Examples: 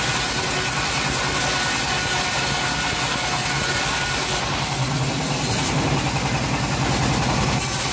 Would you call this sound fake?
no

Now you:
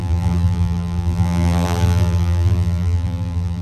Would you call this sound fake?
yes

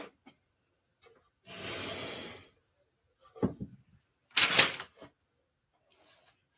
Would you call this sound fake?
no